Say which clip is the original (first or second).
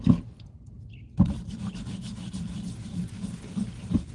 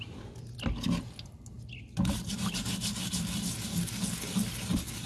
second